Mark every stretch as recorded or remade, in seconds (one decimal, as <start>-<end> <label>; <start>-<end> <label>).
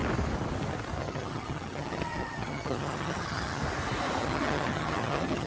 0.0-1.0 recorded; 1.0-3.6 remade; 3.6-4.2 recorded; 4.2-5.5 remade